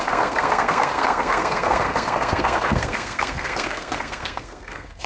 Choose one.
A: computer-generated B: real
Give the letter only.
A